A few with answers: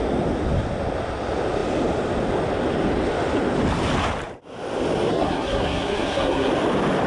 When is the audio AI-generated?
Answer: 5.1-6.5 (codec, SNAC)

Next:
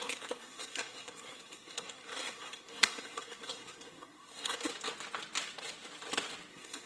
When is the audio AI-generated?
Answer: 0.0-4.7 (codec, SNAC); 6.5-6.9